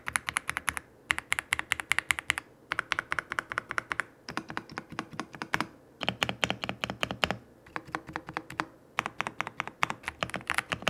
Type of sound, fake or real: real